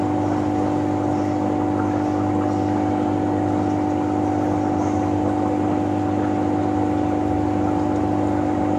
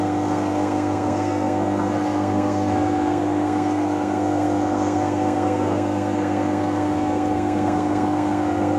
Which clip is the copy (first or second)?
second